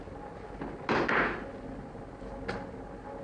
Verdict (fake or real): real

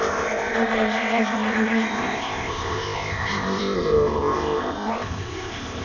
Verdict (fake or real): fake